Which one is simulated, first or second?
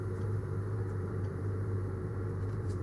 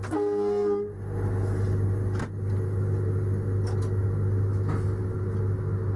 first